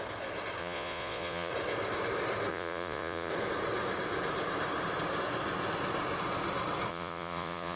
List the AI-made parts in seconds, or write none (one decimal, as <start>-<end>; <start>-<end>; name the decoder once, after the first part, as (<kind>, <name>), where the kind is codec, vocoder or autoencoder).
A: 0.6-1.5 (vocoder, Vocos); 2.5-3.3; 6.9-7.8